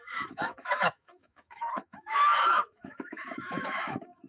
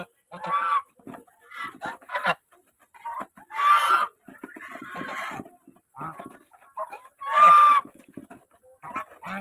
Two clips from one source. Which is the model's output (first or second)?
first